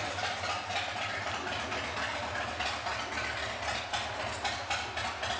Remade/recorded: recorded